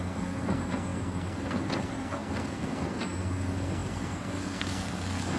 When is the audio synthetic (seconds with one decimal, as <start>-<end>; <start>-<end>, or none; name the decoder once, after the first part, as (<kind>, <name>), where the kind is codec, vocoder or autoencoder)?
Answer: 0.0-5.4 (codec, SNAC)

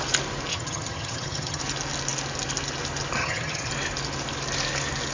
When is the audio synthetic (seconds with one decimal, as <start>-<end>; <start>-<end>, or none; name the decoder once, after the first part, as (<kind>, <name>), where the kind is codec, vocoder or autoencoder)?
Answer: 0.5-1.6 (vocoder, HiFi-GAN); 3.2-3.7

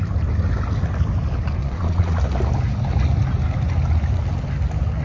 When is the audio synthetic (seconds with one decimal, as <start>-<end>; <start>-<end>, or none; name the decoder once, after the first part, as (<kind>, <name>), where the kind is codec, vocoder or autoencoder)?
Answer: 1.6-2.2 (vocoder, Vocos)